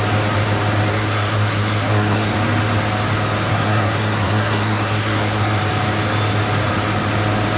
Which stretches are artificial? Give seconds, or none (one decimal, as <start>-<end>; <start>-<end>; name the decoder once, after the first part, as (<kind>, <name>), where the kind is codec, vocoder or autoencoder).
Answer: 0.9-2.3 (codec, SNAC); 3.5-5.6